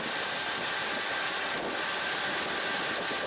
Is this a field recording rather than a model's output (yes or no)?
yes